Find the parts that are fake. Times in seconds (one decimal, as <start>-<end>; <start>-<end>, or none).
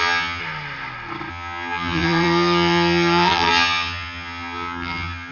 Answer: 0.0-0.4; 1.3-5.3